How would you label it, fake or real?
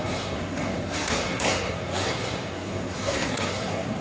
fake